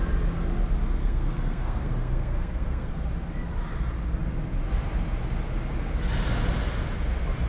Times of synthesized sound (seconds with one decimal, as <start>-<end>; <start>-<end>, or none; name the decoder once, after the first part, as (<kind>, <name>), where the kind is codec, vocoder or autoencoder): 1.0-2.9 (codec, SNAC)